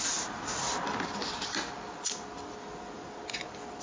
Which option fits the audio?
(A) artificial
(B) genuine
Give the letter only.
B